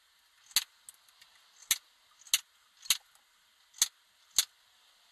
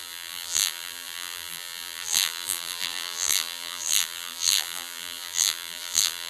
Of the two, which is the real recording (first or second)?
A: first